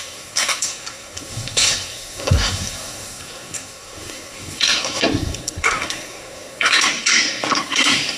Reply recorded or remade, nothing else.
remade